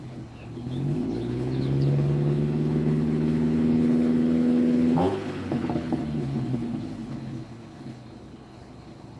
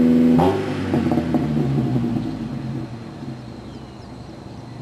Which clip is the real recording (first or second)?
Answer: second